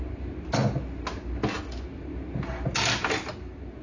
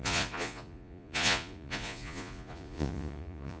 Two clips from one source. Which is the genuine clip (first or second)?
first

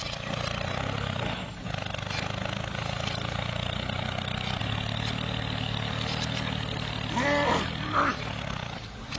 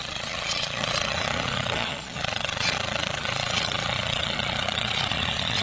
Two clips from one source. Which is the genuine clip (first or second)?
first